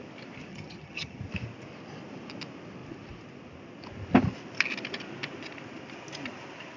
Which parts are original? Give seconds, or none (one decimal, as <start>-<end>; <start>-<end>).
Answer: 0.0-0.5; 1.2-6.8